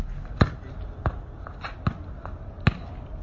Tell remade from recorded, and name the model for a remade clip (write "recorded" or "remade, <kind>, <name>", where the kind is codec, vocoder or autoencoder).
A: recorded